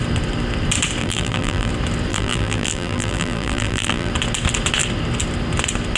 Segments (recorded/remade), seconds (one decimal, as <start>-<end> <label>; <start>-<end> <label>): 0.0-1.0 recorded; 1.0-1.7 remade; 1.7-2.1 recorded; 2.1-4.1 remade; 4.1-6.0 recorded